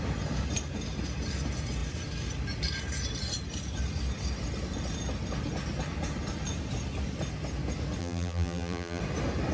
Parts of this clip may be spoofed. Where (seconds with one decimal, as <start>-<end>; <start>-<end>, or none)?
8.0-9.0